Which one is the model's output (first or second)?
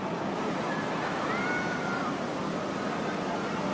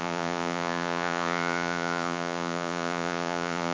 second